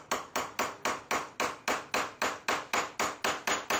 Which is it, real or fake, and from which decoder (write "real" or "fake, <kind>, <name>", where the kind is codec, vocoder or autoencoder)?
real